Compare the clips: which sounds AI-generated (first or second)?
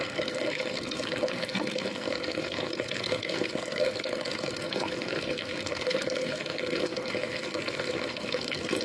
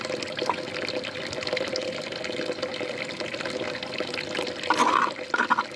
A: first